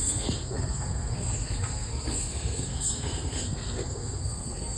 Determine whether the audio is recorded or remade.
remade